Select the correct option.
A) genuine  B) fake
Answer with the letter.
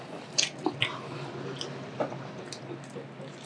A